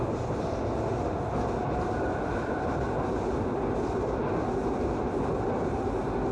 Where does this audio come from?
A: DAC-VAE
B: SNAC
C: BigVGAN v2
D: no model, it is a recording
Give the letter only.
D